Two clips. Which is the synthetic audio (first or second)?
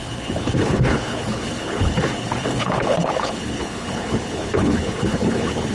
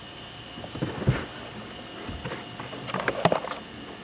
first